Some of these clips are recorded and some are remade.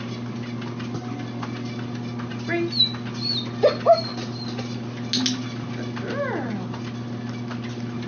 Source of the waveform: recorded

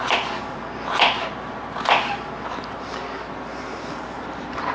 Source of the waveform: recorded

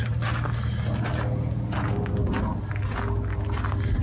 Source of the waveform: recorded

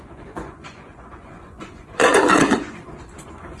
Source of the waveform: remade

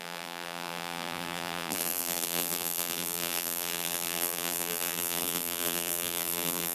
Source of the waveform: remade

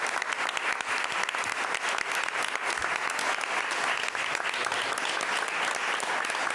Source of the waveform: recorded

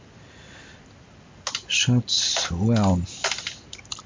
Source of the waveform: recorded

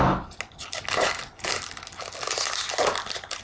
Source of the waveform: recorded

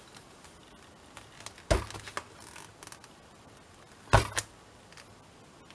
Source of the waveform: recorded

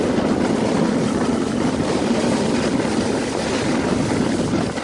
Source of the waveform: remade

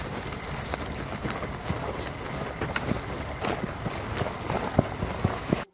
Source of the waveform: recorded